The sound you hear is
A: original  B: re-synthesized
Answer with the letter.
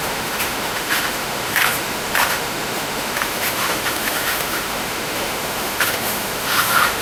B